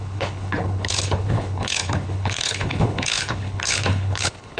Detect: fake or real fake